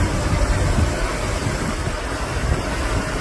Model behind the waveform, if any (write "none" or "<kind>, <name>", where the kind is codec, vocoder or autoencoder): none